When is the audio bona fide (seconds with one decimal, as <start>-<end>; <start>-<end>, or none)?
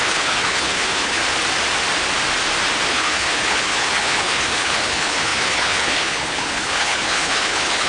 1.2-2.9